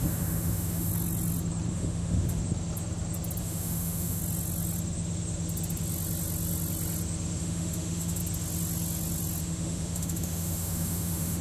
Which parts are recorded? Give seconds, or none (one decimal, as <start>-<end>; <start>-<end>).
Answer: 0.9-1.7; 2.4-3.4; 4.2-7.4; 8.2-9.4